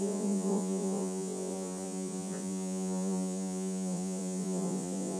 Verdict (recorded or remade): remade